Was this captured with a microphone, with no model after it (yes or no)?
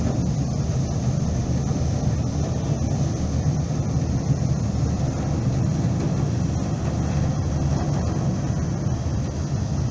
yes